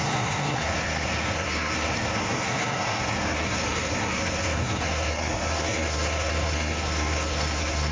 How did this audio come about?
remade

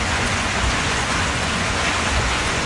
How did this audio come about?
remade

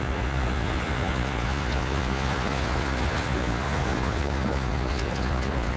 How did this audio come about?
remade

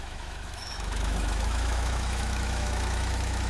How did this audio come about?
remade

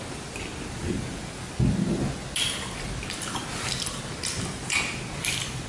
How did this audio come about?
recorded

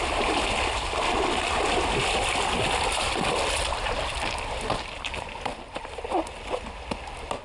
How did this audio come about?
recorded